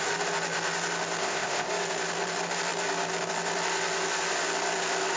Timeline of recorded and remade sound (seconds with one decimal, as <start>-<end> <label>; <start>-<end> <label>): 0.0-1.2 recorded; 1.2-1.7 remade; 1.7-5.2 recorded